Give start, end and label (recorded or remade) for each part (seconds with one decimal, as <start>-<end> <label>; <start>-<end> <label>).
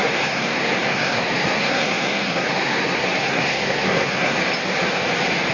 0.0-4.4 remade; 4.4-5.5 recorded